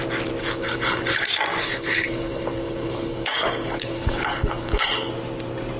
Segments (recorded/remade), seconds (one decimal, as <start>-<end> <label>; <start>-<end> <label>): 0.0-0.4 recorded; 0.4-1.2 remade; 1.2-1.6 recorded; 1.6-5.1 remade; 5.1-5.8 recorded